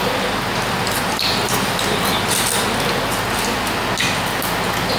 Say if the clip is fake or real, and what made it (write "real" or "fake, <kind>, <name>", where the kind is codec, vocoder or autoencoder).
real